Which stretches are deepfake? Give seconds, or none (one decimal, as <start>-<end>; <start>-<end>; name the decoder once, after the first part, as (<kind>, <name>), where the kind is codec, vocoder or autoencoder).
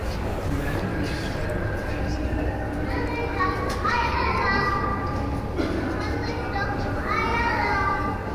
0.0-0.9 (codec, DAC); 3.7-4.9; 7.4-8.3